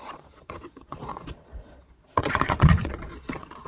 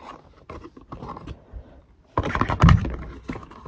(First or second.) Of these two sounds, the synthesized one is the first